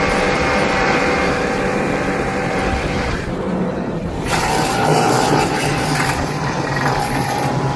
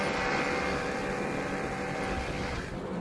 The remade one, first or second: first